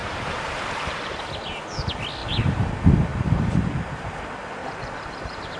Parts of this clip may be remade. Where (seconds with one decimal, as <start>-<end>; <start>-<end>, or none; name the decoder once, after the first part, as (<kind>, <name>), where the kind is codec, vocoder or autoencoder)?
0.0-1.2 (vocoder, BigVGAN v2); 2.2-2.7; 3.1-4.1; 4.6-5.6